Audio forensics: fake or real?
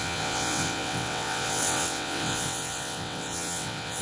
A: fake